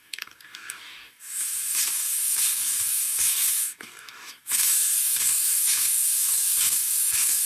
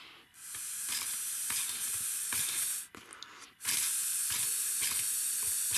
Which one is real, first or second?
second